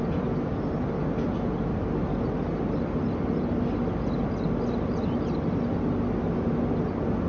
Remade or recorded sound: recorded